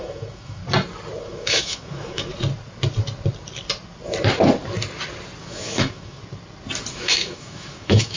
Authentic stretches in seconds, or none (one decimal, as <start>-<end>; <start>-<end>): 0.6-1.2; 2.3-5.4; 6.2-6.9